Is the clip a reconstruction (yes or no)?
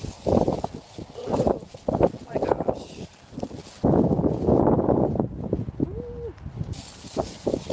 no